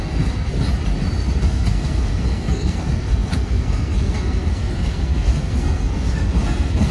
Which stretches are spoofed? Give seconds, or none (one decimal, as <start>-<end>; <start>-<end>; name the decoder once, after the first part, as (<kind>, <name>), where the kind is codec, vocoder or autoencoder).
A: 0.0-0.5 (codec, SNAC); 1.4-6.9